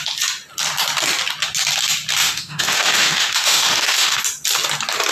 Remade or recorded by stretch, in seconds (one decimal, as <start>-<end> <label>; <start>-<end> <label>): 0.0-2.2 recorded; 2.2-4.2 remade; 4.2-5.1 recorded